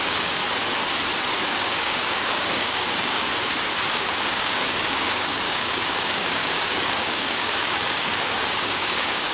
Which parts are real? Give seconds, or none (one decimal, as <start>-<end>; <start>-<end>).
0.4-1.5; 3.3-3.9